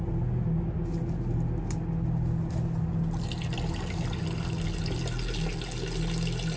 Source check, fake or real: real